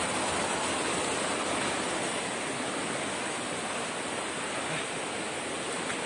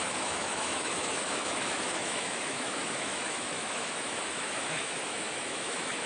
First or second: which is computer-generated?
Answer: second